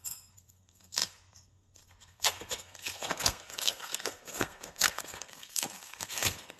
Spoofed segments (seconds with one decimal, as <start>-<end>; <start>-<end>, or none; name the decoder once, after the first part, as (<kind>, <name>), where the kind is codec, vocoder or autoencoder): 0.0-6.6 (codec, SNAC)